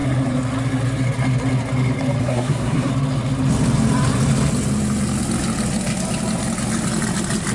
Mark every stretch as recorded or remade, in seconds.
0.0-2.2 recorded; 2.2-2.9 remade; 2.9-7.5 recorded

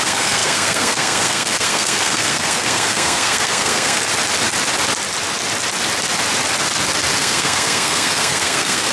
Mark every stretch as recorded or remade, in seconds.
0.0-4.1 remade; 4.1-7.2 recorded; 7.2-8.9 remade

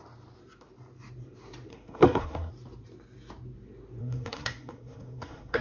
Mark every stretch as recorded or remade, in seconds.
0.0-1.7 recorded; 1.7-2.5 remade; 2.5-4.0 recorded; 4.0-5.6 remade

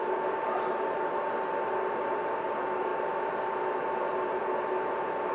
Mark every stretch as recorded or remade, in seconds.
0.0-5.3 recorded